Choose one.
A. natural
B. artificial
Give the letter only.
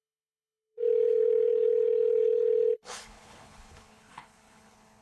B